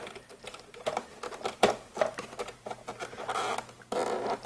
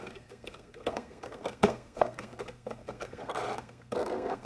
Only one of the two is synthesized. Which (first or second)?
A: second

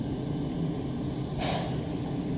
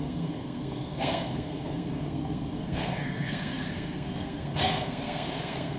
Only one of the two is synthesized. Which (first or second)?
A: second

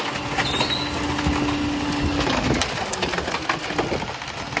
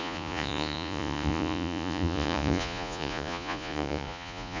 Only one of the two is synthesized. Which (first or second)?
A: second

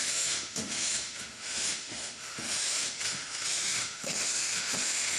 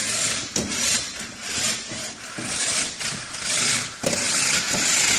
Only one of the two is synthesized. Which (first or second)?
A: first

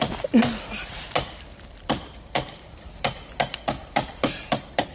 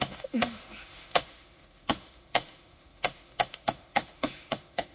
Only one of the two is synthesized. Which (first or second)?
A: second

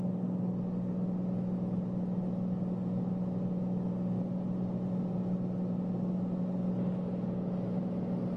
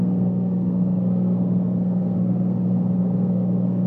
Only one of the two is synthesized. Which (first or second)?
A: second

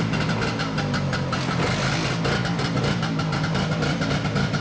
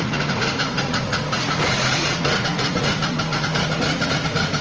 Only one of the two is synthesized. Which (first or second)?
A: second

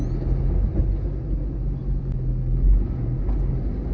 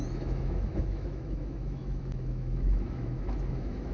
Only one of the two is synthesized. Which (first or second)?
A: second